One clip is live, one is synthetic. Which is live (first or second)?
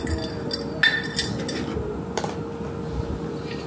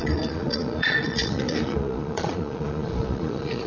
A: first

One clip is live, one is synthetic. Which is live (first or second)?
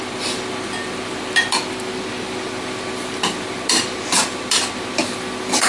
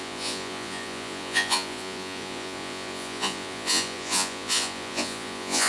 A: first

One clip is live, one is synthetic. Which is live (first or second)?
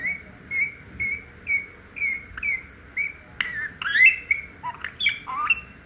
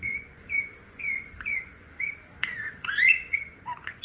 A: first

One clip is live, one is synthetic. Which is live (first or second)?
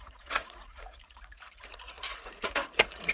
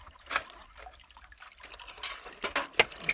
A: second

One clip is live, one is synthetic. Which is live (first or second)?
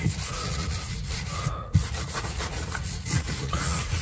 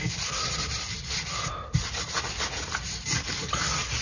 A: second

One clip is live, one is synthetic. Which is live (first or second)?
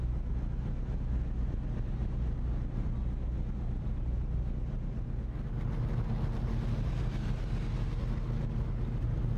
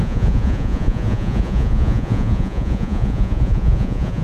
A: first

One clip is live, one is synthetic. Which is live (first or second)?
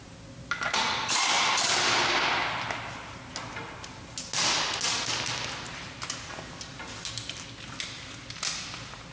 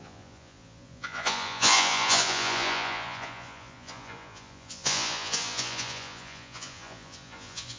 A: first